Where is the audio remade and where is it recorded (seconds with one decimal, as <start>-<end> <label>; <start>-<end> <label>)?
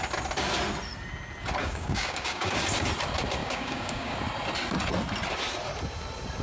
0.0-1.6 recorded; 1.6-2.6 remade; 2.6-3.4 recorded; 3.4-4.2 remade; 4.2-6.4 recorded